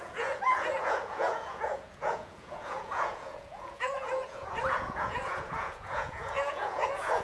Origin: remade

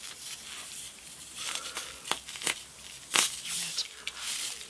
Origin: recorded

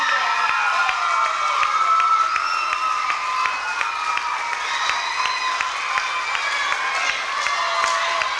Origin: recorded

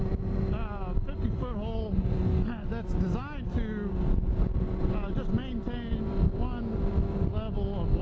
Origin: recorded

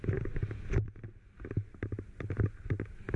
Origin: recorded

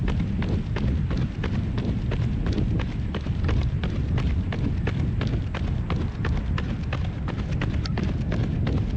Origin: recorded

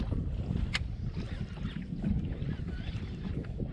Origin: recorded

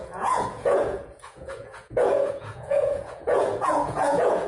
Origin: remade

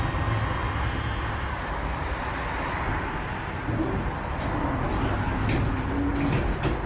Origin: recorded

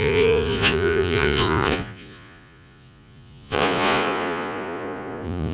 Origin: remade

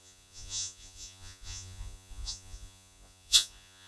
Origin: remade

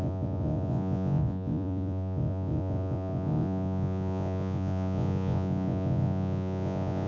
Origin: remade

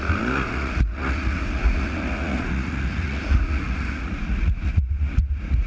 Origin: remade